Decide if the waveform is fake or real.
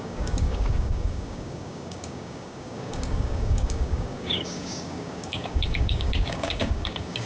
fake